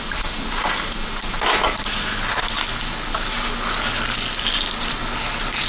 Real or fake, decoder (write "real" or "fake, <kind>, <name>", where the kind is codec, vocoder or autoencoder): real